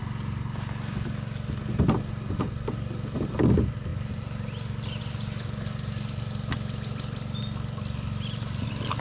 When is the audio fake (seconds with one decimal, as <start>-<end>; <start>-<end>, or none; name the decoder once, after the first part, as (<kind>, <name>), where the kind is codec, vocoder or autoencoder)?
none